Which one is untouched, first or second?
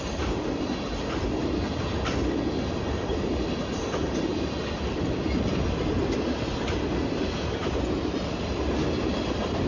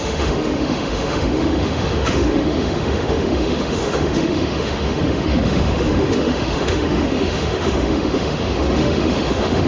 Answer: first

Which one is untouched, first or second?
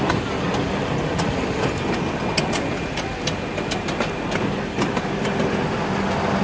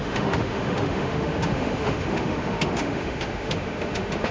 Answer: first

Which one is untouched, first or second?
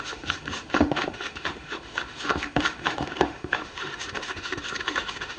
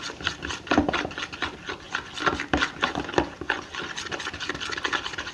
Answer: second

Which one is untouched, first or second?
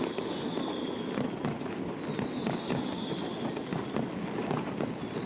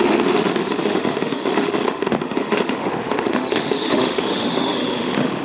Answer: first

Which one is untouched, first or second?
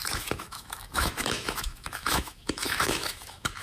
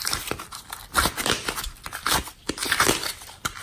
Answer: second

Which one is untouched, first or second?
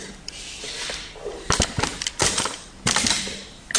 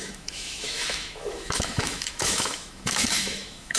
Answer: first